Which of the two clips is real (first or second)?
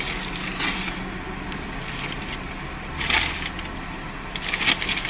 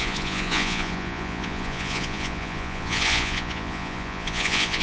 first